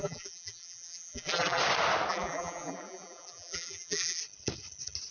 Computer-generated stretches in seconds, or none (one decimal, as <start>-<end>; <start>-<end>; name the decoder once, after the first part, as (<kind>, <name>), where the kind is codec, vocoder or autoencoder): 0.0-1.6 (vocoder, BigVGAN v2); 2.1-4.2